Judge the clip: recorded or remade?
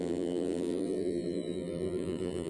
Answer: remade